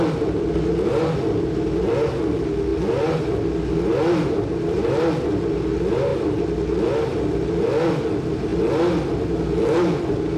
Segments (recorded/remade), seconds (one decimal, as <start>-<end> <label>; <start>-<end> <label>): 0.0-10.4 recorded